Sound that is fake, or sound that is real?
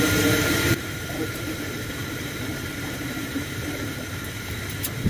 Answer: fake